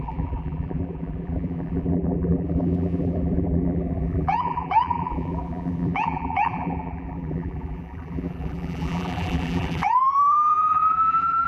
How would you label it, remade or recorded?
remade